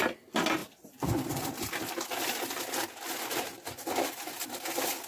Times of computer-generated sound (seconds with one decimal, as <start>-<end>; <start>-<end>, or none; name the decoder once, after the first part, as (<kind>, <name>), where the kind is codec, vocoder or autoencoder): 0.6-2.6 (vocoder, BigVGAN v2)